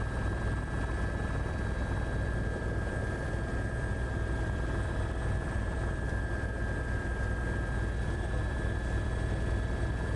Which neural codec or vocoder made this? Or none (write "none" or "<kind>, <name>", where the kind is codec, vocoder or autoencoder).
vocoder, BigVGAN v2